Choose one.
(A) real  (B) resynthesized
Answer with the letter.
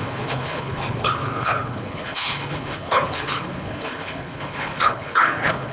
B